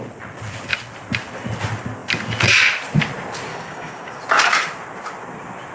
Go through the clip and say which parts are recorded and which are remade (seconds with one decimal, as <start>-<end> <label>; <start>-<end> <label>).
0.0-3.5 recorded; 3.5-4.2 remade; 4.2-5.7 recorded